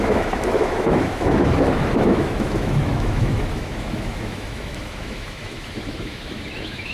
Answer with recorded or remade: remade